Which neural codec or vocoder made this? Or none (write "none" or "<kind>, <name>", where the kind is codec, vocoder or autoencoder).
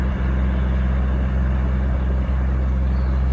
none